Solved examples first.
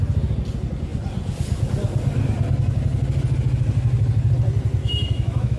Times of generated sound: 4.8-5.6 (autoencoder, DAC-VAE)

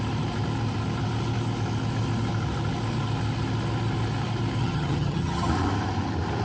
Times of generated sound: 4.6-5.5 (vocoder, HiFi-GAN)

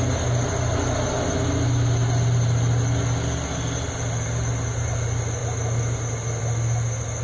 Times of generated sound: none

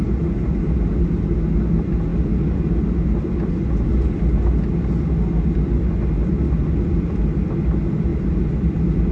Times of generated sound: 2.1-3.5 (vocoder, BigVGAN v2); 3.9-4.5; 6.6-7.2; 8.1-9.1

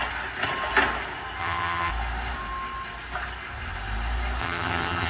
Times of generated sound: 1.4-1.9 (vocoder, HiFi-GAN); 4.4-5.1

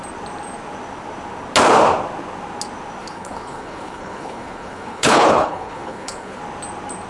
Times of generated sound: 3.0-6.4 (codec, HILCodec)

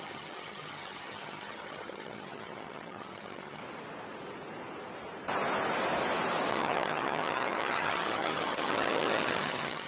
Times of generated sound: 0.0-3.6 (vocoder, HiFi-GAN); 6.5-9.9